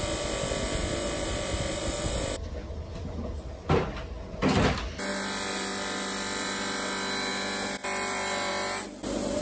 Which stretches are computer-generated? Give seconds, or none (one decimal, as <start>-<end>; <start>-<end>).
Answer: 0.8-3.4; 5.1-6.7